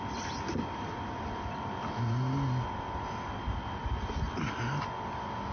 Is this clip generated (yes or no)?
no